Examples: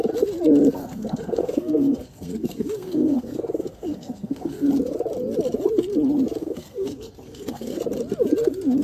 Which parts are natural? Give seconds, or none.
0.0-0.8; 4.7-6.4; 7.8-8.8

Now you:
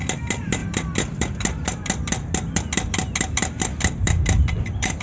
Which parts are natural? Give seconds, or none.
0.0-5.0

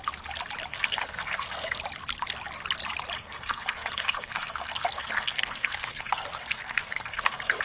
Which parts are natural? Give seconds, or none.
0.0-0.7; 1.8-3.2

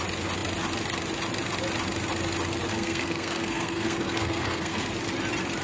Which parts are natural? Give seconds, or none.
0.0-2.7; 4.9-5.6

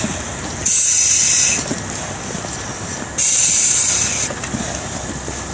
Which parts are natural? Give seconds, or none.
0.0-5.5